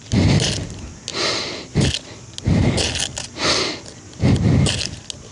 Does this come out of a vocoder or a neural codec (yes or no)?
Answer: no